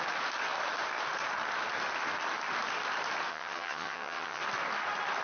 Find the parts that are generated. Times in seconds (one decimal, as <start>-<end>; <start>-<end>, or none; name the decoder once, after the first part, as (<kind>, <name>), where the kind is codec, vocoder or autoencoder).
3.3-4.4 (vocoder, HiFi-GAN)

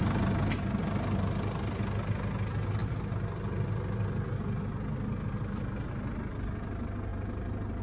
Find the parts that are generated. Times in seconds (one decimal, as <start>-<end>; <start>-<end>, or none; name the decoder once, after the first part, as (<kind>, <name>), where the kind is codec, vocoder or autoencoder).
none

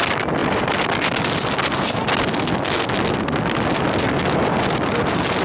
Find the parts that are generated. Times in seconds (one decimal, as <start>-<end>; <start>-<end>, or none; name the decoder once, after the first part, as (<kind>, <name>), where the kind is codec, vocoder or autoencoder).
none